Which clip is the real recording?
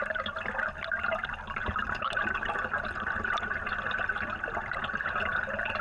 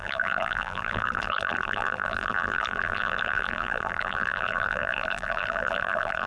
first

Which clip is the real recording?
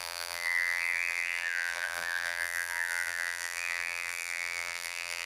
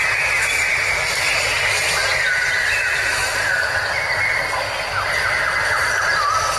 second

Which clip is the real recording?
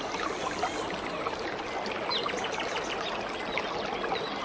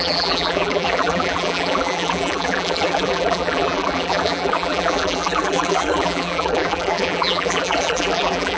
first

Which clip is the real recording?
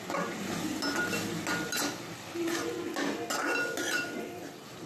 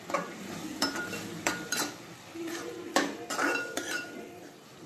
first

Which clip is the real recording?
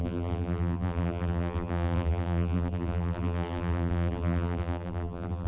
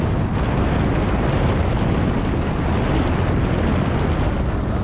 second